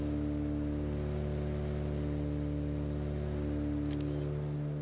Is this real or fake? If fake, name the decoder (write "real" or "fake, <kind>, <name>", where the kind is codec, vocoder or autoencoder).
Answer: real